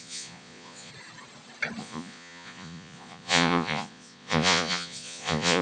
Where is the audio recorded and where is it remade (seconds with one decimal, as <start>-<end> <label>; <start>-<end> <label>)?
0.0-0.9 remade; 0.9-1.8 recorded; 1.8-5.6 remade